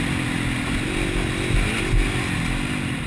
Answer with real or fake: real